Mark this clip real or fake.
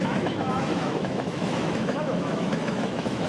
fake